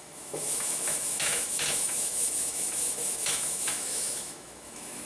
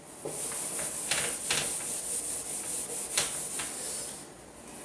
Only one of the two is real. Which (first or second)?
second